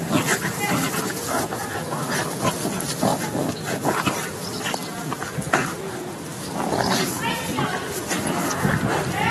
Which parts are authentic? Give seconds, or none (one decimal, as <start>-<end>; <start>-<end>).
0.0-9.3

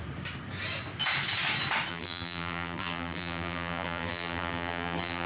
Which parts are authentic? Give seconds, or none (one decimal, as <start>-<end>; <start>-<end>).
0.0-1.9